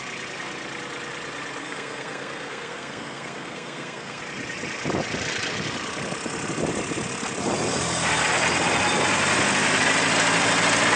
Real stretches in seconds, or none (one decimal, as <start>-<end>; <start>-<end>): 0.0-1.6; 4.2-11.0